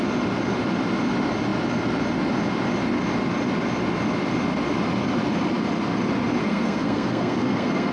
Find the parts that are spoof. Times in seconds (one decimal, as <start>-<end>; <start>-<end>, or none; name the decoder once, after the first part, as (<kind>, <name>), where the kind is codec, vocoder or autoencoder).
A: 6.4-7.9 (codec, SNAC)